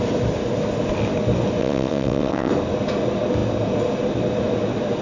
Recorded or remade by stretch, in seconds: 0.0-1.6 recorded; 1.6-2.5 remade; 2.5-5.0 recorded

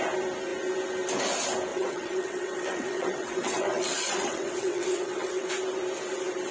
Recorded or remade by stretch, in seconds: 0.0-1.7 recorded; 1.7-5.5 remade; 5.5-6.5 recorded

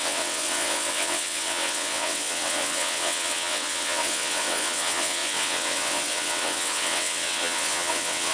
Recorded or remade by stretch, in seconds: 0.0-8.3 remade

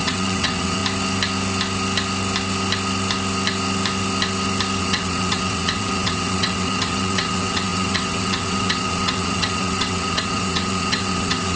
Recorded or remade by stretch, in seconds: 0.0-0.8 remade; 0.8-4.8 recorded; 4.8-11.6 remade

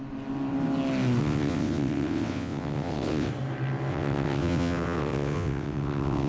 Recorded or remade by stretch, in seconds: 0.0-1.2 recorded; 1.2-3.3 remade; 3.3-3.9 recorded; 3.9-6.3 remade

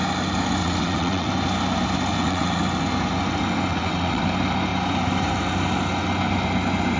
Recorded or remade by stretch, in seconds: 0.0-0.6 recorded; 0.6-1.3 remade; 1.3-2.1 recorded; 2.1-2.6 remade; 2.6-3.7 recorded; 3.7-4.3 remade; 4.3-7.0 recorded

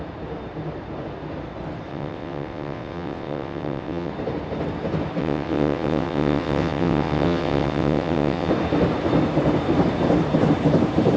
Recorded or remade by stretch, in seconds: 0.0-1.9 recorded; 1.9-4.1 remade; 4.1-5.2 recorded; 5.2-8.5 remade; 8.5-11.2 recorded